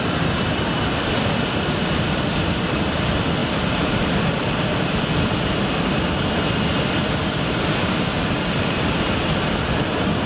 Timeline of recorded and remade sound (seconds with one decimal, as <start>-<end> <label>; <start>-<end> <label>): 0.0-10.3 remade